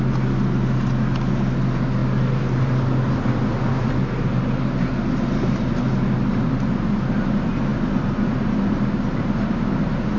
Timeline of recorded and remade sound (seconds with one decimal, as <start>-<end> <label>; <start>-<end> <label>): 0.0-10.2 recorded